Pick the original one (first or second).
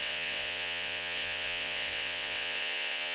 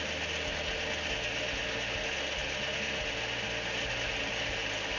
second